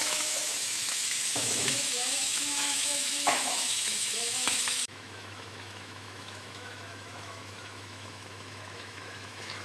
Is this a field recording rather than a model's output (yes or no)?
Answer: no